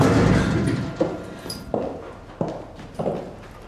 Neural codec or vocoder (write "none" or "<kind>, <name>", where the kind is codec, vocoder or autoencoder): none